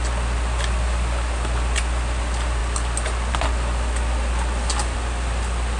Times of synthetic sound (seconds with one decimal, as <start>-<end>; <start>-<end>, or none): none